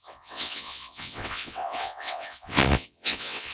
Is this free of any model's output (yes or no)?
no